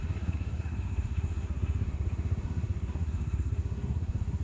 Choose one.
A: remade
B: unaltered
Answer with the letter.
A